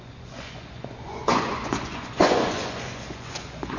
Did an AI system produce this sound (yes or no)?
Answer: yes